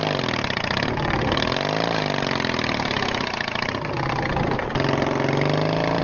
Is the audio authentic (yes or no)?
yes